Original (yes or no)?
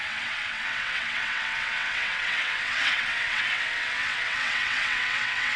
no